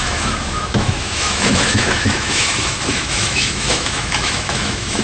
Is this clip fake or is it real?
fake